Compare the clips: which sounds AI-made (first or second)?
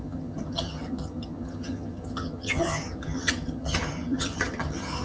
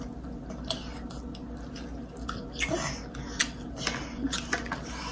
first